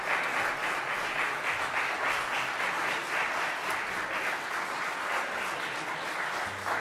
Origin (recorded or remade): recorded